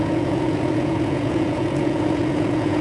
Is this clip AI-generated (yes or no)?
yes